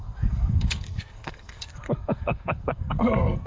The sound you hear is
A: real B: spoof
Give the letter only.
B